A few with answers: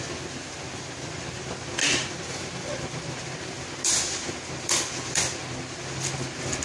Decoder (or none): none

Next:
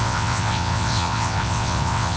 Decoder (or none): vocoder, WaveNeXt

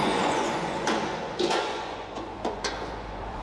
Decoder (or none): vocoder, Vocos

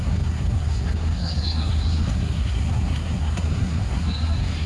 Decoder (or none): codec, SNAC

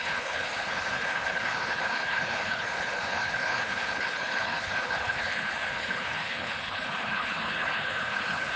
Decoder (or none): codec, HILCodec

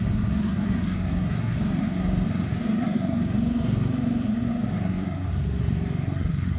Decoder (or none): codec, SNAC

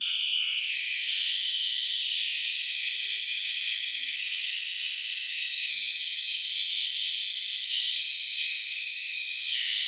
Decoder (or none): codec, SNAC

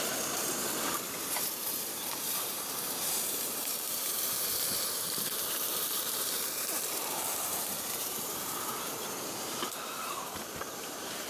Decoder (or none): vocoder, BigVGAN v2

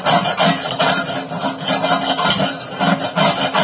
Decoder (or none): none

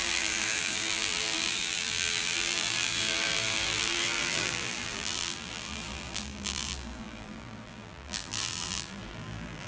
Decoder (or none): vocoder, BigVGAN v2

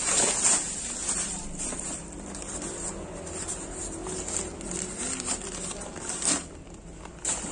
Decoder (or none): none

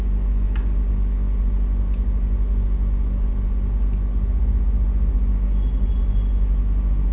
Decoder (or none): none